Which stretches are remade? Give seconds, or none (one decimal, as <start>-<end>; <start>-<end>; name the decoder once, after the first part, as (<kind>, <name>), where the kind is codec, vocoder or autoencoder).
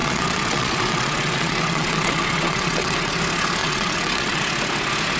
0.0-3.1 (vocoder, WaveNeXt); 3.6-4.4